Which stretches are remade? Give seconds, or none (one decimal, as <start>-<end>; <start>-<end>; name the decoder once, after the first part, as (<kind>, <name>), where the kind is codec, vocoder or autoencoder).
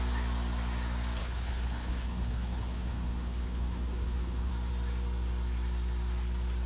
1.2-4.5 (codec, HILCodec)